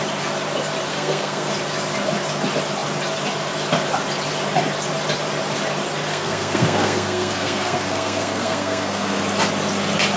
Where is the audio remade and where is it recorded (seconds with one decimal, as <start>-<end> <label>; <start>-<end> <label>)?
0.0-0.9 recorded; 0.9-1.5 remade; 1.5-6.1 recorded; 6.1-9.2 remade; 9.2-10.2 recorded